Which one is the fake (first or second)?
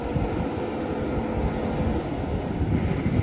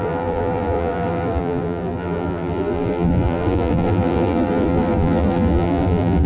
second